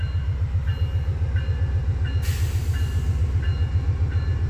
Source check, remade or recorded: recorded